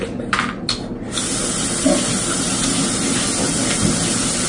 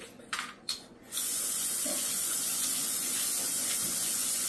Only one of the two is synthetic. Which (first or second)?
second